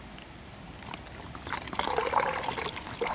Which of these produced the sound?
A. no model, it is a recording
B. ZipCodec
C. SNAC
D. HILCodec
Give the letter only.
A